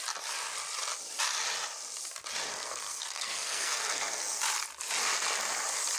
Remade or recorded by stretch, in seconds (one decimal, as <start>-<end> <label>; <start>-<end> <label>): 0.0-2.5 recorded; 2.5-4.4 remade; 4.4-6.0 recorded